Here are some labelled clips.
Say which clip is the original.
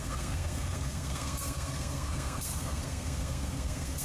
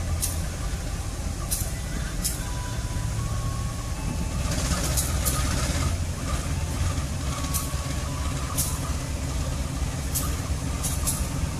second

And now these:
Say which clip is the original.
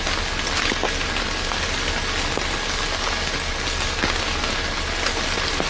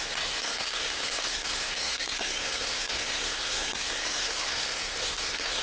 first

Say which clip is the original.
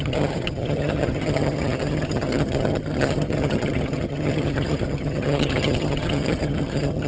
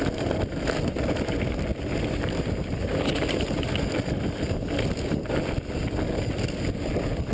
second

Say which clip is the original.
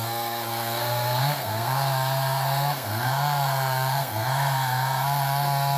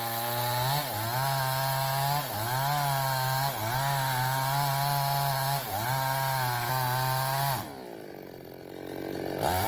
second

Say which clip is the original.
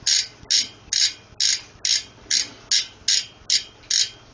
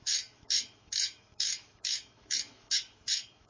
first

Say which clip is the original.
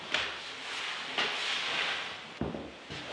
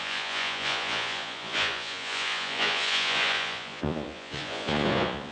first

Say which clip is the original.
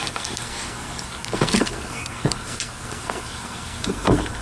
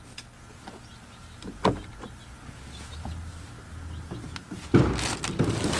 second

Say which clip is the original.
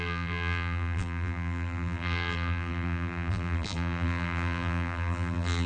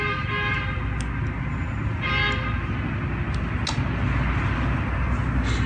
second